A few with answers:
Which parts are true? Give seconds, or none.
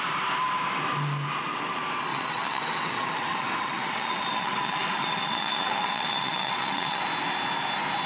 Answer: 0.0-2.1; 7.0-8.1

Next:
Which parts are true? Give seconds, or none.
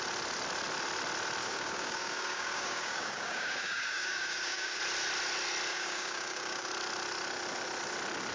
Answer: 0.0-1.4; 4.8-5.7; 6.7-8.3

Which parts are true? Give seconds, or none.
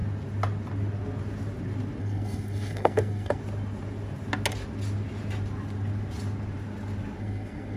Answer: 0.0-2.0; 3.4-7.2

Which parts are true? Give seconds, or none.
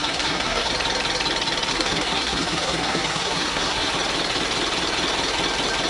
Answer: 0.7-1.7; 3.9-5.9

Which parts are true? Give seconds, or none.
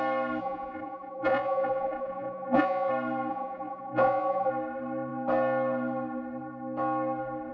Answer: 0.0-0.4; 2.9-3.3; 4.5-7.5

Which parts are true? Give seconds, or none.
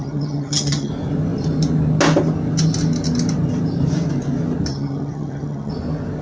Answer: 0.9-4.7; 5.7-6.2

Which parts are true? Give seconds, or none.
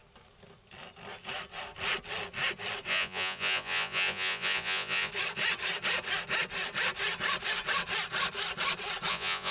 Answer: 0.0-2.9; 5.1-9.1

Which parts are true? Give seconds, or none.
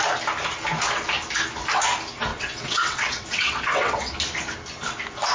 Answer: 0.0-2.3; 4.1-5.3